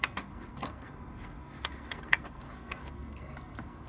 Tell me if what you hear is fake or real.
fake